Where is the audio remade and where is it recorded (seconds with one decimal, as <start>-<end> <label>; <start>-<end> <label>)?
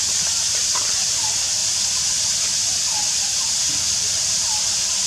0.0-5.1 recorded